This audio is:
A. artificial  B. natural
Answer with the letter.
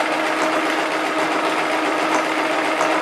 B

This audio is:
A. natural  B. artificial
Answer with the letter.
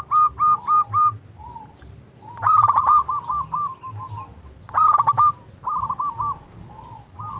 A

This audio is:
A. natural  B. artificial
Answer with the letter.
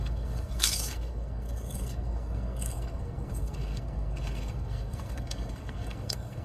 B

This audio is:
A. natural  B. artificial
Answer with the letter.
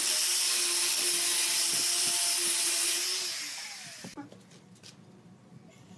A